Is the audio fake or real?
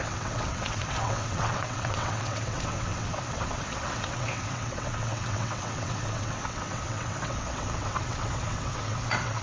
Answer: fake